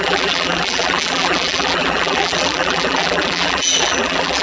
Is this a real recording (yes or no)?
no